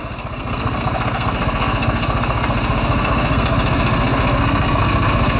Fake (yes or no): yes